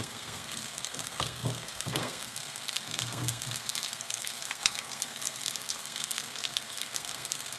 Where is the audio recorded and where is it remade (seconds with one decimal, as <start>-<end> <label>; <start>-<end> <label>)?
0.0-7.6 remade